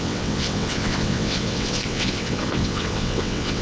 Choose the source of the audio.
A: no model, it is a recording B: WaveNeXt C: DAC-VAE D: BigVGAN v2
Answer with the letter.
B